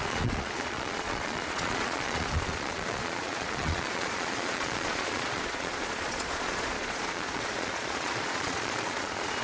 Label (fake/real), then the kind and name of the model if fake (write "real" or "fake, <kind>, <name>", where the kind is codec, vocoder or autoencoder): fake, vocoder, Vocos